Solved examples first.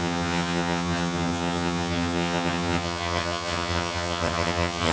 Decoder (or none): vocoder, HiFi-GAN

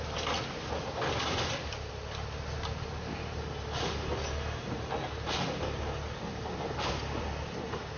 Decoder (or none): none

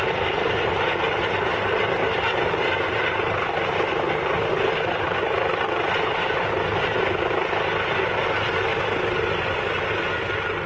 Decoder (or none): none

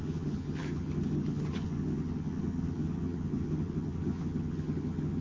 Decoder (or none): vocoder, HiFi-GAN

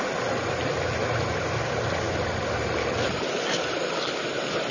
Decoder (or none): none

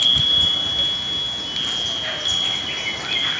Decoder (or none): none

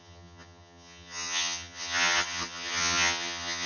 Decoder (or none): vocoder, HiFi-GAN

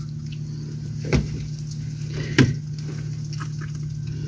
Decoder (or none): none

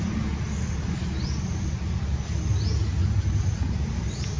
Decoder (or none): none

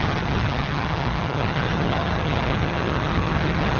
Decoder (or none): vocoder, HiFi-GAN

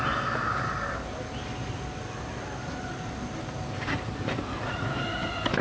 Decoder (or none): none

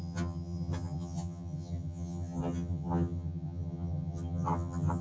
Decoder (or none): vocoder, HiFi-GAN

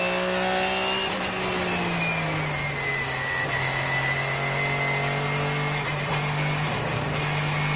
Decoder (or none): none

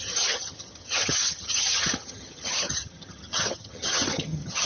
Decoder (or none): vocoder, HiFi-GAN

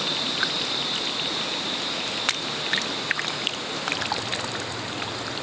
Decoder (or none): none